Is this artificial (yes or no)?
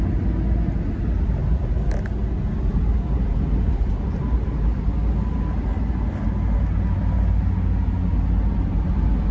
no